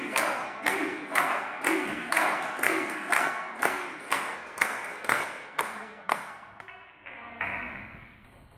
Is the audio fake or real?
fake